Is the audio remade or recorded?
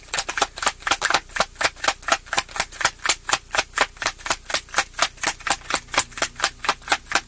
recorded